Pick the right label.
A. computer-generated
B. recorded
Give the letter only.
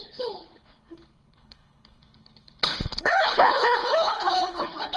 A